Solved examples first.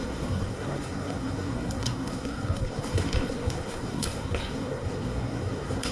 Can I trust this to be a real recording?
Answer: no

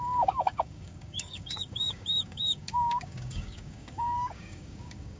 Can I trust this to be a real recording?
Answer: no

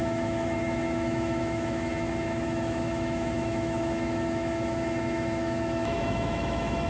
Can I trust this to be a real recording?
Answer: no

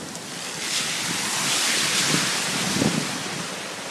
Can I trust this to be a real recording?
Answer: yes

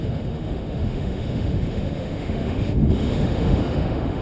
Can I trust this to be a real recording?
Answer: no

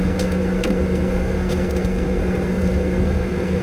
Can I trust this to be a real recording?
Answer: no